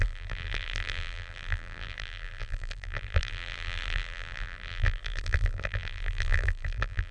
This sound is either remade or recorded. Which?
remade